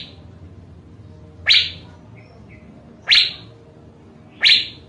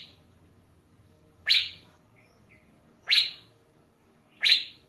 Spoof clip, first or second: second